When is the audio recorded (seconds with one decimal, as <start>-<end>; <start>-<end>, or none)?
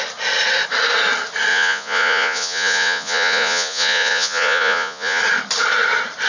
0.0-1.5; 5.2-6.3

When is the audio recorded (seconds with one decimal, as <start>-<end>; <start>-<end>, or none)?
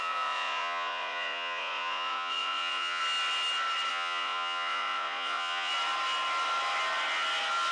3.0-3.9; 5.7-7.7